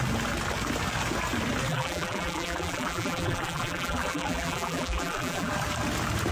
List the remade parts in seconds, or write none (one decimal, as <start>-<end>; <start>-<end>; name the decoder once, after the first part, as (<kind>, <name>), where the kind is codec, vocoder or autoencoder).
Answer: 1.7-5.5 (vocoder, BigVGAN v2)